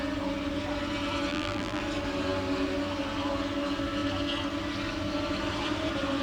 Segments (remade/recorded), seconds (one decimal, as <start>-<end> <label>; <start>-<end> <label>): 0.0-1.3 recorded; 1.3-1.8 remade; 1.8-6.2 recorded